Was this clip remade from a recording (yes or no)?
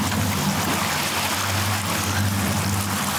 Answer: no